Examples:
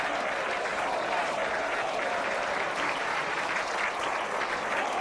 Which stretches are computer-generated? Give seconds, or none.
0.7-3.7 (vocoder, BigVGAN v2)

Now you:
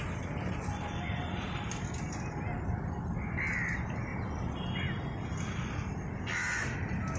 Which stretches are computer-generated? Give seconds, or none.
1.2-1.7 (vocoder, BigVGAN v2); 4.1-4.7